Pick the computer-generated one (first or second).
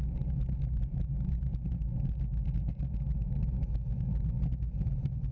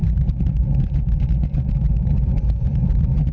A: second